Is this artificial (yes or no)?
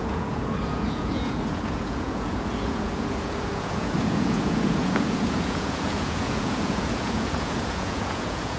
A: yes